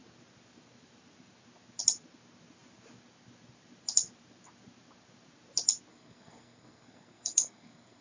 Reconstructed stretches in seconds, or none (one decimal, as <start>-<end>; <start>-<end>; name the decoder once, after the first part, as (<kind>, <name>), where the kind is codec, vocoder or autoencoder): 5.9-8.0 (codec, SNAC)